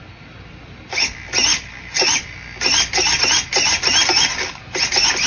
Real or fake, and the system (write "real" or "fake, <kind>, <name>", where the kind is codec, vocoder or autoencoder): real